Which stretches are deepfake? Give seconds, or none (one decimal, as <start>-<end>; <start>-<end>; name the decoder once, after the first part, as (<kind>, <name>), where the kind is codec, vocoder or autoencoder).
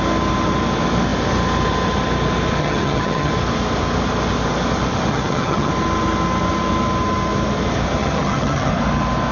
2.6-3.3 (vocoder, HiFi-GAN); 5.1-5.7; 8.0-8.7